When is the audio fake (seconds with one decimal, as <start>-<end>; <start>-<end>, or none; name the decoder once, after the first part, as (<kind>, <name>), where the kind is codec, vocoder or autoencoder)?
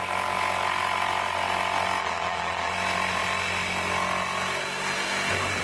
2.0-2.7 (vocoder, Vocos)